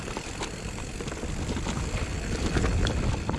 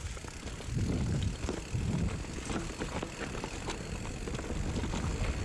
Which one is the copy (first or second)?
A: first